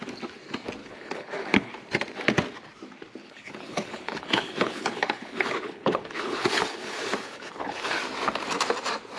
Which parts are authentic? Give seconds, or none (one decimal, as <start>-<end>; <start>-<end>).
0.0-0.8; 1.7-3.2; 8.0-9.2

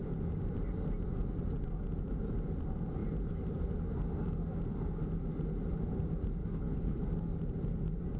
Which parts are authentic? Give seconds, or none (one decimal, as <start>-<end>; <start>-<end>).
0.0-6.4; 7.0-8.2

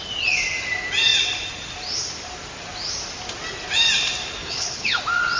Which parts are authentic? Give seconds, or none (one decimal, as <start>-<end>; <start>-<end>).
0.0-4.4; 5.0-5.4

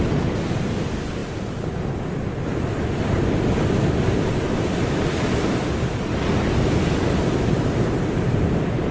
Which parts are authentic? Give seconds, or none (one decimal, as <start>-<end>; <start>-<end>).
0.0-8.9

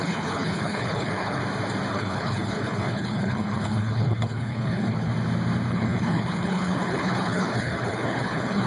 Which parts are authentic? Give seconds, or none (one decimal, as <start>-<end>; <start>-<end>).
1.4-1.9; 5.1-5.7

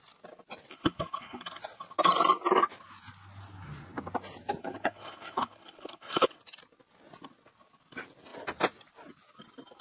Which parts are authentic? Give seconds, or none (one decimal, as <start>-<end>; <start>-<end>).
0.0-0.7; 1.6-4.6; 6.4-9.8

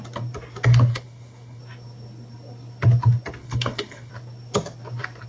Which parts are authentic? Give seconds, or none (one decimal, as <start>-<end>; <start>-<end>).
0.0-0.9; 1.6-3.4; 4.1-5.3

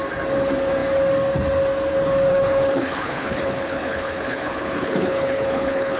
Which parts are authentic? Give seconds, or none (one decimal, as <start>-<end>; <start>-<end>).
0.0-2.3